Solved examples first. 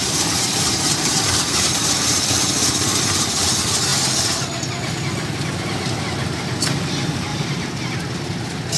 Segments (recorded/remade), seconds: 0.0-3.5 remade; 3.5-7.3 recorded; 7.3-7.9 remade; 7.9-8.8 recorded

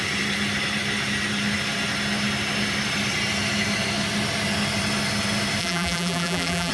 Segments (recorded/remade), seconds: 0.0-5.6 recorded; 5.6-6.7 remade

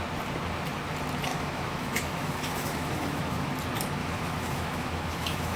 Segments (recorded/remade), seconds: 0.0-1.3 recorded; 1.3-3.5 remade; 3.5-4.0 recorded; 4.0-5.6 remade

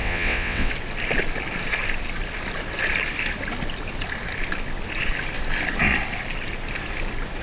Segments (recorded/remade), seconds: 0.0-0.7 remade; 0.7-7.4 recorded